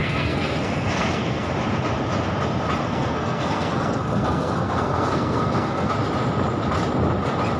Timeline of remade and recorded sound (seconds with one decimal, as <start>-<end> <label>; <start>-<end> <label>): 0.0-1.5 remade; 1.5-2.8 recorded; 2.8-5.9 remade; 5.9-7.6 recorded